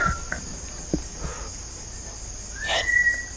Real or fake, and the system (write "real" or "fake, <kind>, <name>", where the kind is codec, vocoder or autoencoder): real